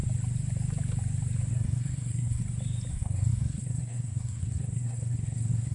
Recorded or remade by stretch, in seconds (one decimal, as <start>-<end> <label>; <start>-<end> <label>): 0.0-1.5 recorded; 1.5-2.4 remade; 2.4-2.9 recorded; 2.9-5.7 remade